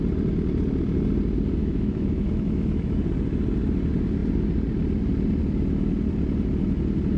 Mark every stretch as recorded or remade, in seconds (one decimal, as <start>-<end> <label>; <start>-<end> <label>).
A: 0.0-1.6 recorded; 1.6-3.0 remade; 3.0-7.2 recorded